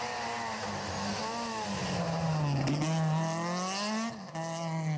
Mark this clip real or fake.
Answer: real